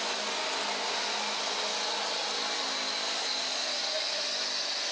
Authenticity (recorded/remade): recorded